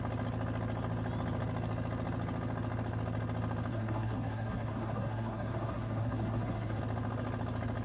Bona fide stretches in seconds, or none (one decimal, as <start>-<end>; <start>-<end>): 0.0-3.7; 6.8-7.8